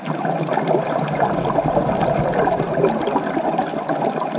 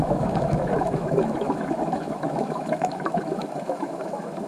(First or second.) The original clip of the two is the first